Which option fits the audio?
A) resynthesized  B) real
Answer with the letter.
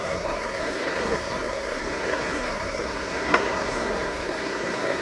A